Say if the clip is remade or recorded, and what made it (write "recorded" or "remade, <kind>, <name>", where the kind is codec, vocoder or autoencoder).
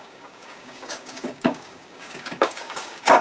remade, codec, DAC